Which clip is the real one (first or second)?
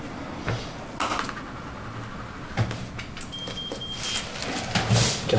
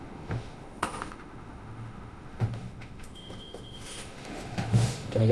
first